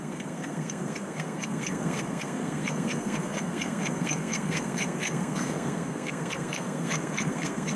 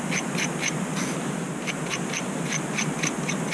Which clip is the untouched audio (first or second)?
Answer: second